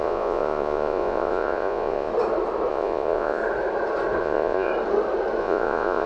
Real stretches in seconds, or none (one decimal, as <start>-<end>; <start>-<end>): 2.1-2.7; 3.4-4.2; 4.7-5.4